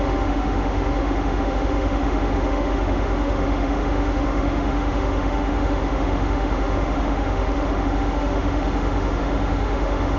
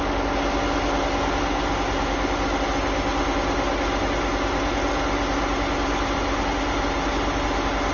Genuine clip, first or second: second